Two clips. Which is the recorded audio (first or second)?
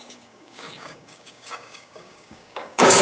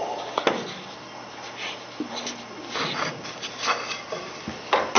second